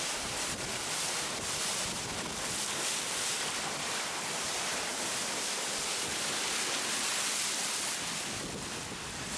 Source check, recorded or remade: remade